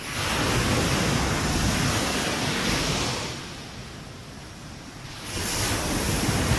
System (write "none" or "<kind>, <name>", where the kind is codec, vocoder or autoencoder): none